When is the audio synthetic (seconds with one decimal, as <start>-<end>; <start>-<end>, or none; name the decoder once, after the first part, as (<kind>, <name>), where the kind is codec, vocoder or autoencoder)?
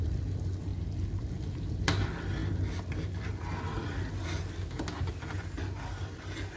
0.0-0.7 (vocoder, BigVGAN v2); 1.2-2.4